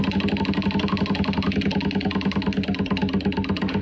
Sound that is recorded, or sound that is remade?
recorded